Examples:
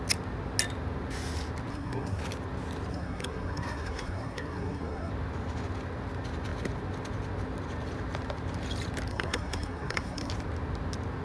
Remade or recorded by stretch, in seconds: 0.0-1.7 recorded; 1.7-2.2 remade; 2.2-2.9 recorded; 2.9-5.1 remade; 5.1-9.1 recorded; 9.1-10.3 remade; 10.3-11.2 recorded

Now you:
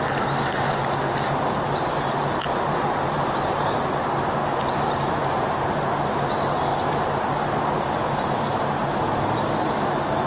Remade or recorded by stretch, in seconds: 0.0-4.4 recorded; 4.4-5.6 remade; 5.6-6.7 recorded; 6.7-9.5 remade; 9.5-10.3 recorded

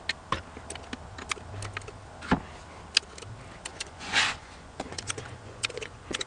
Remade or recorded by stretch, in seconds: 0.0-3.7 recorded; 3.7-6.3 remade

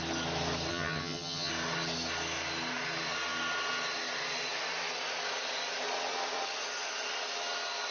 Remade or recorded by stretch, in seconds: 0.0-0.7 recorded; 0.7-1.5 remade; 1.5-7.9 recorded

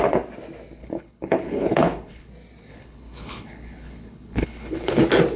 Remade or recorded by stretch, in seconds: 0.0-0.8 recorded; 0.8-2.3 remade; 2.3-2.7 recorded; 2.7-5.0 remade; 5.0-5.4 recorded

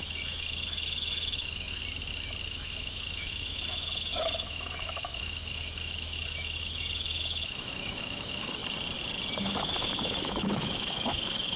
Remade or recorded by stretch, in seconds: 0.0-1.8 remade; 1.8-2.4 recorded; 2.4-8.6 remade; 8.6-9.4 recorded; 9.4-11.6 remade

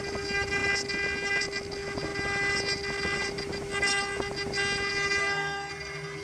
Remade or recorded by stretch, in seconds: 0.0-5.2 recorded; 5.2-5.7 remade; 5.7-6.2 recorded

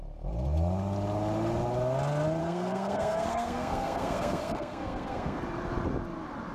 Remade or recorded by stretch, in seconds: 0.0-2.4 recorded; 2.4-5.4 remade; 5.4-6.5 recorded